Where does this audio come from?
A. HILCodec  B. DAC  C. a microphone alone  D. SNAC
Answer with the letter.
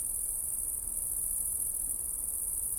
C